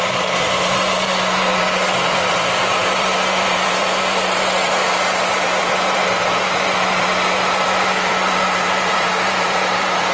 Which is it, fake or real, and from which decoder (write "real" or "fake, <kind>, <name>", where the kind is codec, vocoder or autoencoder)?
fake, vocoder, BigVGAN v2